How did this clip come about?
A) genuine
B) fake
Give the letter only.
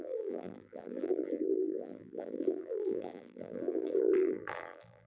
B